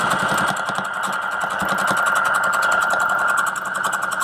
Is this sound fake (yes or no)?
no